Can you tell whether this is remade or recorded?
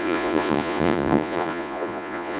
remade